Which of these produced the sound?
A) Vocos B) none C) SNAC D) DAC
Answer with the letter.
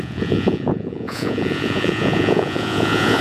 A